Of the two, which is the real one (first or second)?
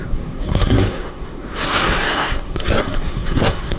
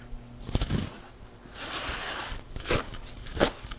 second